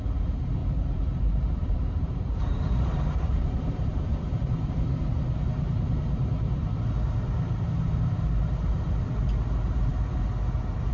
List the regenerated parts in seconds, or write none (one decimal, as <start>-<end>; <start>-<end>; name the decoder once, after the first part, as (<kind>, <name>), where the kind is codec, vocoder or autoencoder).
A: 0.6-5.0 (vocoder, BigVGAN v2)